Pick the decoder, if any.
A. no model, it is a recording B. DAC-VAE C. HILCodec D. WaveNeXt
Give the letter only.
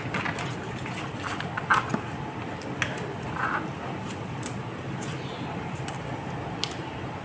A